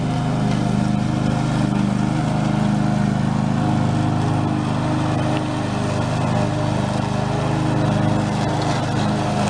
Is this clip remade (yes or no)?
no